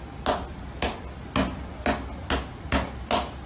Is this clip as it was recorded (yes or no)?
yes